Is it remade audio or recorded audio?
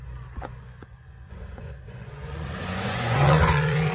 remade